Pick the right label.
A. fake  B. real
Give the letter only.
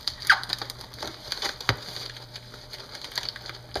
B